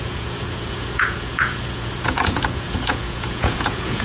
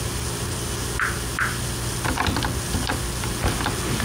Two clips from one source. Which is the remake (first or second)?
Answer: first